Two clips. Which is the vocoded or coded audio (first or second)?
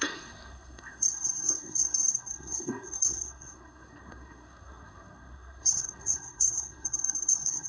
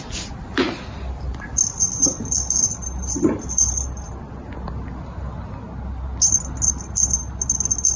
first